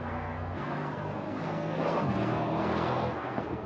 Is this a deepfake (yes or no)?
yes